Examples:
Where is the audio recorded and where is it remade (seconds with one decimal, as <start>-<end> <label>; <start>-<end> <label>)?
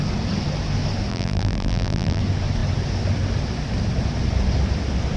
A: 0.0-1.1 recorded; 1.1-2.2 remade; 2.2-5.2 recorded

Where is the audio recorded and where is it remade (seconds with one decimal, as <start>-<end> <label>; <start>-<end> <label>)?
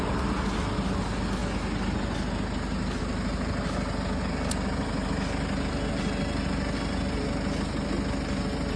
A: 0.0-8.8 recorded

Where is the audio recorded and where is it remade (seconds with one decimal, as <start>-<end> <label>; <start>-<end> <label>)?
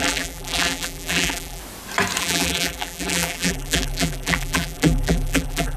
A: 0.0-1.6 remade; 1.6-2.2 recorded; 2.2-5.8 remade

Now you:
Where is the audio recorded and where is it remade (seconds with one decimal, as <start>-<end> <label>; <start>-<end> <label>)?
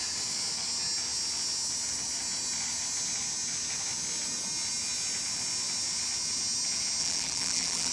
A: 0.0-7.0 recorded; 7.0-7.9 remade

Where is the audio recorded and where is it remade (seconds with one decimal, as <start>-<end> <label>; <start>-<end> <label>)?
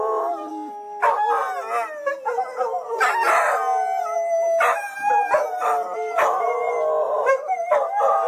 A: 0.0-0.5 remade; 0.5-5.5 recorded; 5.5-8.3 remade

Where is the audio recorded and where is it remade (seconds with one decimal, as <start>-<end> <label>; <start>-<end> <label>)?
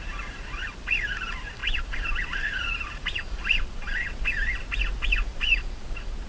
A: 0.0-1.6 recorded; 1.6-2.2 remade; 2.2-2.7 recorded; 2.7-4.1 remade; 4.1-5.3 recorded; 5.3-6.3 remade